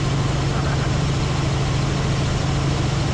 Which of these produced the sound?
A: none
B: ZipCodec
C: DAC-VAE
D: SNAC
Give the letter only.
A